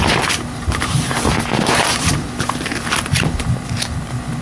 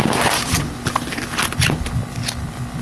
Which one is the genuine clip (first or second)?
second